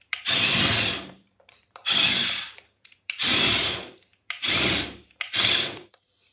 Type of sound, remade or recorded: remade